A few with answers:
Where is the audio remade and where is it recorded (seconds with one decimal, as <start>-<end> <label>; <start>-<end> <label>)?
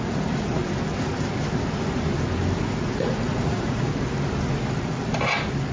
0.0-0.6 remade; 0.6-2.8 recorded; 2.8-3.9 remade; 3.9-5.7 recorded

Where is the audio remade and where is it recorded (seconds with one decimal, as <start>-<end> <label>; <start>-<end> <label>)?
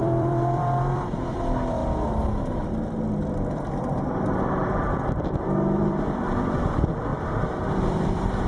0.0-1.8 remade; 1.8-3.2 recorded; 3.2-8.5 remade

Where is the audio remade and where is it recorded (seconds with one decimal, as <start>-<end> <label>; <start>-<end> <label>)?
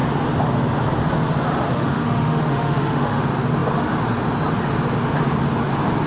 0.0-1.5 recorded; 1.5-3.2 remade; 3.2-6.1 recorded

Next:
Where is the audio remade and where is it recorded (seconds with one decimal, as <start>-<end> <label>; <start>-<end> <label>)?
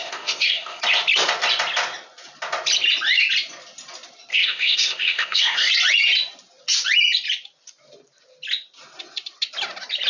0.0-0.8 remade; 0.8-4.3 recorded; 4.3-5.7 remade; 5.7-10.1 recorded